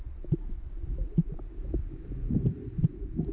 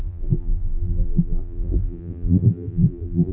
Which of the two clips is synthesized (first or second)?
second